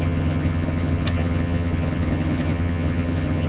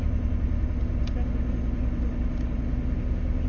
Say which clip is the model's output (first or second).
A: first